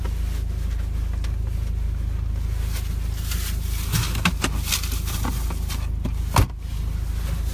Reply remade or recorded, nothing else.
recorded